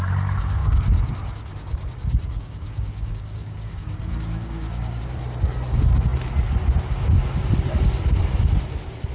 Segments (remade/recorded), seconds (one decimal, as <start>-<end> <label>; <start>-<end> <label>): 0.0-0.6 recorded; 0.6-5.0 remade; 5.0-9.1 recorded